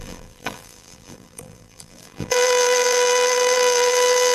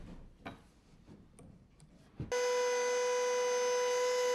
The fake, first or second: first